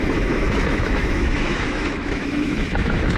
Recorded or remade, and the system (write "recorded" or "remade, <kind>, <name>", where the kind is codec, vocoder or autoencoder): remade, autoencoder, DAC-VAE